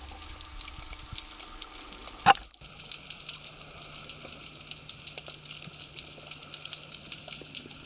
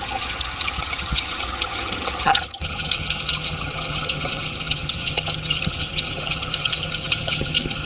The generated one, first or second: second